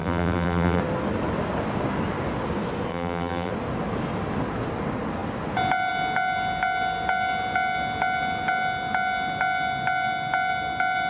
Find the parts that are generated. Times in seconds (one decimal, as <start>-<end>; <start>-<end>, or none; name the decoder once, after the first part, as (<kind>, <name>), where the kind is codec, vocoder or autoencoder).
0.0-0.8 (vocoder, BigVGAN v2); 2.9-3.5